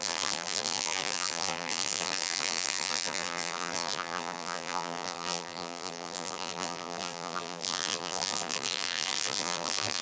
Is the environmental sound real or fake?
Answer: fake